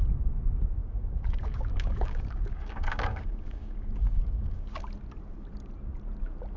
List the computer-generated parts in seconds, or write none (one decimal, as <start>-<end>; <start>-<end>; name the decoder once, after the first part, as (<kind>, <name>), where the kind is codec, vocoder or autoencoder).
0.8-4.8 (codec, DAC)